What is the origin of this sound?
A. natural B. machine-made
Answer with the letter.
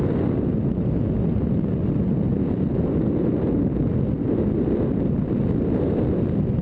A